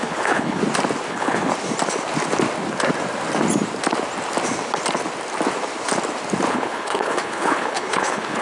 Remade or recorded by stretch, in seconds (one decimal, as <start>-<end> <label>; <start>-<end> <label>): 0.0-0.6 remade; 0.6-1.1 recorded; 1.1-1.5 remade; 1.5-6.5 recorded; 6.5-8.4 remade